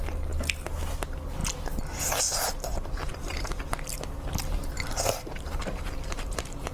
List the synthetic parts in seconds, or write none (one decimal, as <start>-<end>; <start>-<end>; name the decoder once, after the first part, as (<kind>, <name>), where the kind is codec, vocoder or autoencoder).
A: 3.1-3.6 (vocoder, BigVGAN v2); 4.4-5.8